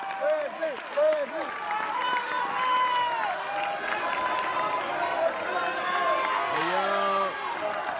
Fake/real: real